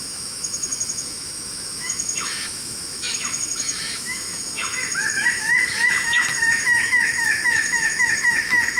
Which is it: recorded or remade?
remade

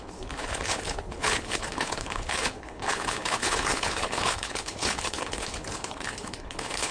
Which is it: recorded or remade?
remade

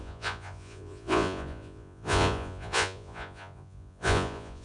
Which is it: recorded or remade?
remade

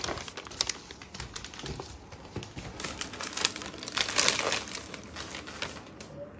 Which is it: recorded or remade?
recorded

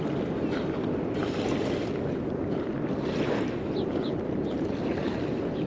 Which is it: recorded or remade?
recorded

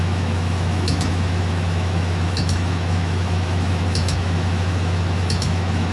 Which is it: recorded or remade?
remade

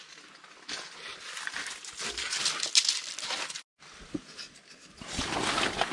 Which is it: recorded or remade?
recorded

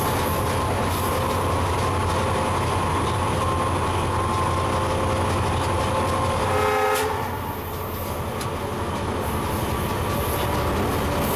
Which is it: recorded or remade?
recorded